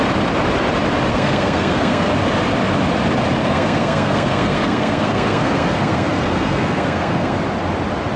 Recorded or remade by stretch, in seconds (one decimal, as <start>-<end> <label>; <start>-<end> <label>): 0.0-1.1 recorded; 1.1-2.1 remade; 2.1-3.4 recorded; 3.4-7.4 remade; 7.4-8.2 recorded